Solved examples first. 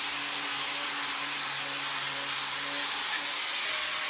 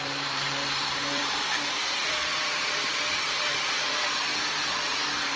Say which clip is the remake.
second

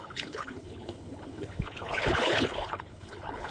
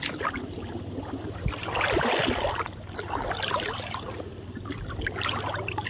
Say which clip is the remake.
first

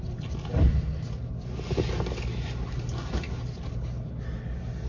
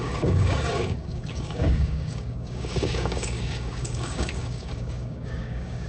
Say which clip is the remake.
second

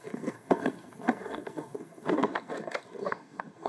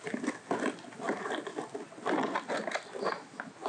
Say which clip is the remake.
first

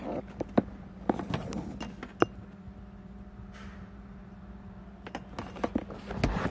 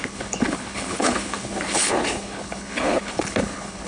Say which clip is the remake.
second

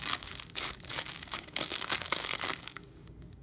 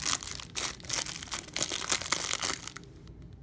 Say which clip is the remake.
first